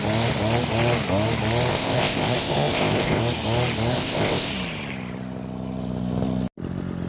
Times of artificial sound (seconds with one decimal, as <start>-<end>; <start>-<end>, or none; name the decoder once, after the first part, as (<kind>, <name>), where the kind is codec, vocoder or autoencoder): 1.7-3.2 (codec, ZipCodec); 3.9-4.5